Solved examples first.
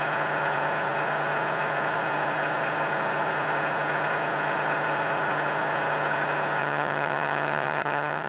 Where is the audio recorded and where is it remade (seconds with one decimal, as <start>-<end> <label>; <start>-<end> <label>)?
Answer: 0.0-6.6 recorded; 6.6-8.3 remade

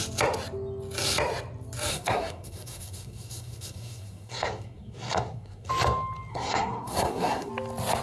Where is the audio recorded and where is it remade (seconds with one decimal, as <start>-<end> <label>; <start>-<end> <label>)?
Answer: 0.0-1.9 recorded; 1.9-5.7 remade; 5.7-6.3 recorded; 6.3-7.5 remade; 7.5-8.0 recorded

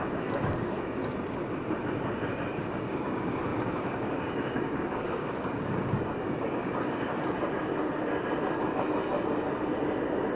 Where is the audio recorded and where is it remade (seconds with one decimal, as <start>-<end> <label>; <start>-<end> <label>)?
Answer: 0.0-1.0 remade; 1.0-2.6 recorded; 2.6-7.7 remade; 7.7-10.4 recorded

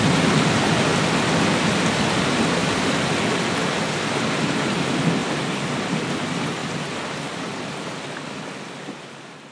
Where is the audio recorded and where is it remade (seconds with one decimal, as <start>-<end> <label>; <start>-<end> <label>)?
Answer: 0.0-9.5 recorded